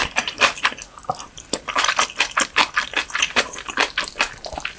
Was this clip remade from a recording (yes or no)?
no